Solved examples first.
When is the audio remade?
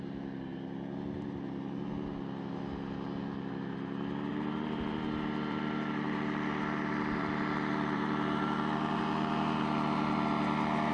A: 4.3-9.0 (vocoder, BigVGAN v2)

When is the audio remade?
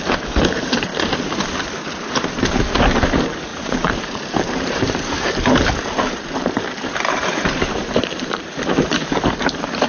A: 0.0-0.9 (vocoder, BigVGAN v2); 2.3-9.9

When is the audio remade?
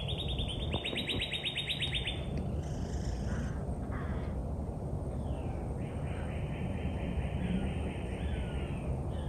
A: none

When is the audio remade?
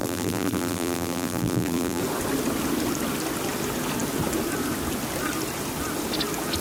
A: 0.0-2.0 (vocoder, BigVGAN v2)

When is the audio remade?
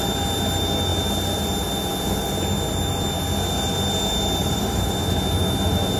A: 4.4-4.9 (vocoder, BigVGAN v2)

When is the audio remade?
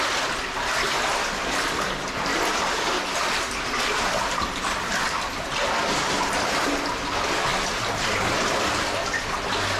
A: 2.3-6.8 (vocoder, BigVGAN v2); 7.5-8.8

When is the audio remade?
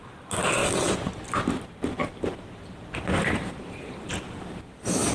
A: 0.6-1.1 (vocoder, BigVGAN v2)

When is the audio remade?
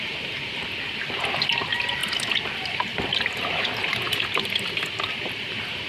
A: 0.0-5.9 (vocoder, BigVGAN v2)